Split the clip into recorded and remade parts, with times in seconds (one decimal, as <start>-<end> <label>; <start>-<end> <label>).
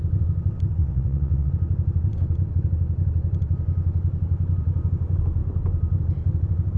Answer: 0.0-0.8 recorded; 0.8-1.5 remade; 1.5-6.8 recorded